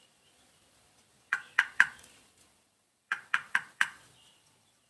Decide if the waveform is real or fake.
fake